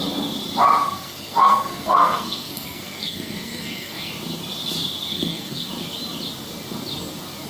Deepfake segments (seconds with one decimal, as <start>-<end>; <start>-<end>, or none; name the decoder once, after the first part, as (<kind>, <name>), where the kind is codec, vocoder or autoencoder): 0.8-4.1 (codec, SNAC); 5.1-5.7